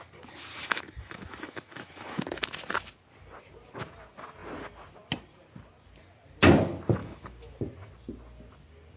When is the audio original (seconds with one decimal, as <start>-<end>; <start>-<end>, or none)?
0.0-0.5; 2.2-7.0; 7.6-9.0